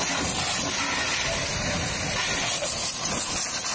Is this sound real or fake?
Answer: real